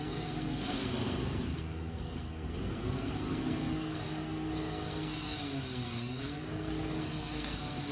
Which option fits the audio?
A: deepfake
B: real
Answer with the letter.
A